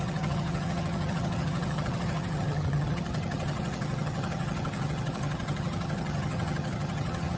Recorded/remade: remade